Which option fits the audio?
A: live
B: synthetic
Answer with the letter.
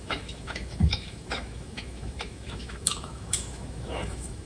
B